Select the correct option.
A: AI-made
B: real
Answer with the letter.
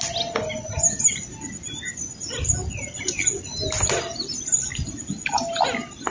B